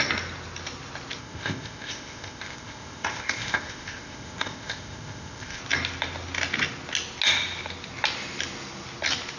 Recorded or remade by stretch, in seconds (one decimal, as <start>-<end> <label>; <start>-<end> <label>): 0.0-1.2 recorded; 1.2-5.6 remade; 5.6-9.4 recorded